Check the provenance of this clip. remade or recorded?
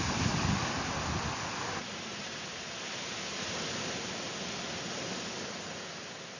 recorded